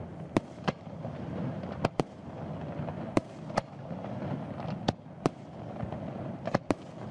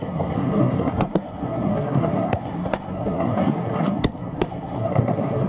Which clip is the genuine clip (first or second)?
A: first